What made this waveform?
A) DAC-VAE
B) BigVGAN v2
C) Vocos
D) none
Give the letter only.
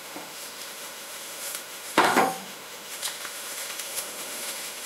A